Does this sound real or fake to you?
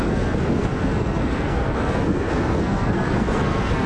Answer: fake